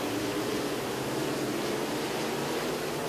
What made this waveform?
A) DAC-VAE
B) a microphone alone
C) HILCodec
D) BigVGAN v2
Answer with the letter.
B